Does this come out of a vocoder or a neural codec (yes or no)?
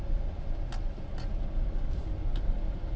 no